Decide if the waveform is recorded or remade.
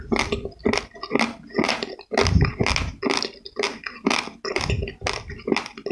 recorded